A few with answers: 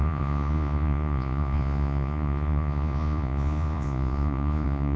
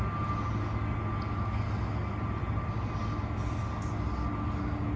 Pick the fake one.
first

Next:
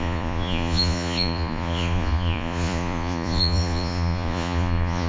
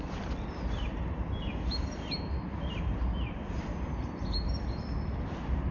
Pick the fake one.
first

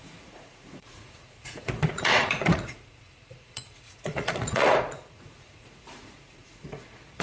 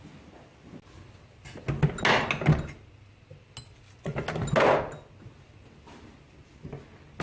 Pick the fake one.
first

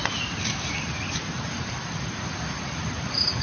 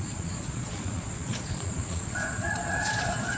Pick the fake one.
second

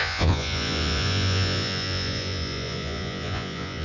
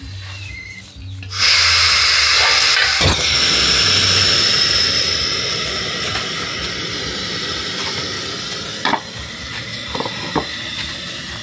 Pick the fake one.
first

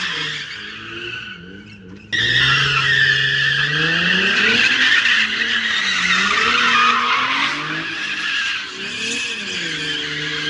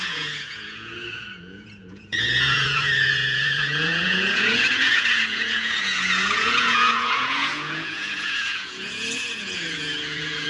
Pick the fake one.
second